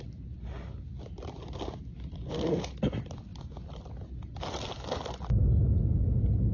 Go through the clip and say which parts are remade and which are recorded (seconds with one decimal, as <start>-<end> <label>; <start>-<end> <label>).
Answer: 0.0-6.5 recorded